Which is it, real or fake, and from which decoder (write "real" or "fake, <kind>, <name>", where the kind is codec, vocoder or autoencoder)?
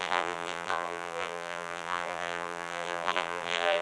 fake, vocoder, BigVGAN v2